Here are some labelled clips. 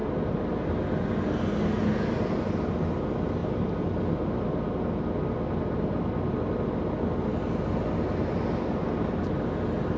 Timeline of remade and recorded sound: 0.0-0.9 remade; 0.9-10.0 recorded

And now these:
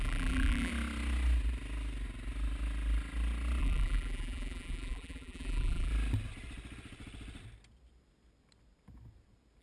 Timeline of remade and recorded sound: 0.0-0.7 remade; 0.7-3.6 recorded; 3.6-5.9 remade; 5.9-9.6 recorded

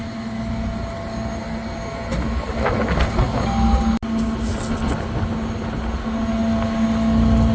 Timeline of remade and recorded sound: 0.0-7.5 recorded

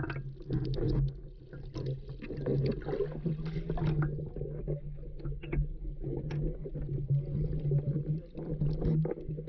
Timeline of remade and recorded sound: 0.0-9.5 recorded